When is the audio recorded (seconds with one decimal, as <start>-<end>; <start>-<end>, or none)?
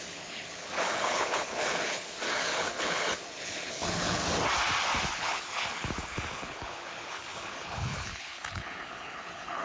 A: 4.2-5.1